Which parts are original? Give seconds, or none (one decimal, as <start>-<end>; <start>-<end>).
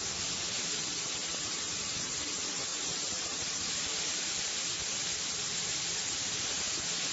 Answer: 0.0-2.7; 5.8-7.1